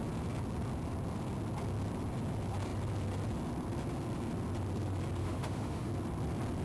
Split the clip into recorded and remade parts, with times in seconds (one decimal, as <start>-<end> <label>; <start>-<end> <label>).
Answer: 0.0-5.2 recorded; 5.2-5.9 remade; 5.9-6.6 recorded